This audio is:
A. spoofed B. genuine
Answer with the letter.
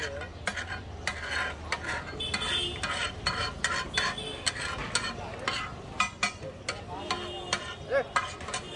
B